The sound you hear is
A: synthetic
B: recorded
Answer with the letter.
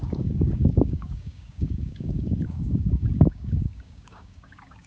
A